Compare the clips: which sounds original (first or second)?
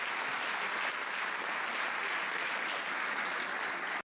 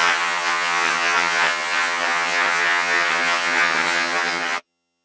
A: first